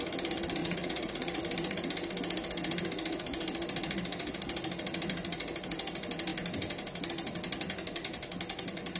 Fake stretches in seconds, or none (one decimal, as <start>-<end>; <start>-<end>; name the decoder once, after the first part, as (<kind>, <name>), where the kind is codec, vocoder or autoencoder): 0.6-1.4 (vocoder, Vocos)